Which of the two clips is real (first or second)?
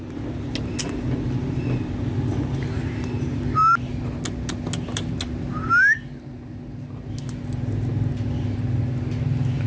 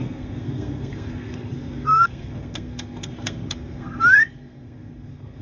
first